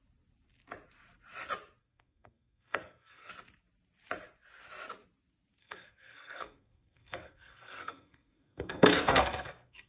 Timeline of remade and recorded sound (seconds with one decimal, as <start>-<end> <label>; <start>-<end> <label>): 0.0-1.8 recorded; 1.8-3.3 remade; 3.3-5.6 recorded; 5.6-9.9 remade